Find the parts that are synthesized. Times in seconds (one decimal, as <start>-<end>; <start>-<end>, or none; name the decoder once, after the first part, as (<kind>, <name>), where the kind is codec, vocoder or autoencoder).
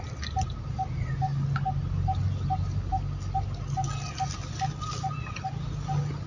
none